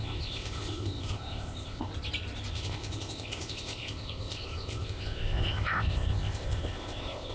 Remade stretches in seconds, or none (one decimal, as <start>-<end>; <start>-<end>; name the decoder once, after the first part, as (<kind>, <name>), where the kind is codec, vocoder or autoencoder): 0.0-1.9 (codec, ZipCodec); 2.5-7.3